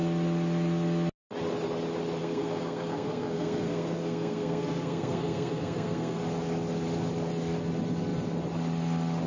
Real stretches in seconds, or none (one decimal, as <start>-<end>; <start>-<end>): 0.0-2.2; 6.2-9.3